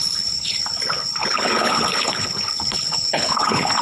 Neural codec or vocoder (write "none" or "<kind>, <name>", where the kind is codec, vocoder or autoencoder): codec, HILCodec